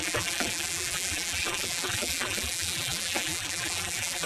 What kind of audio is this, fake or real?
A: fake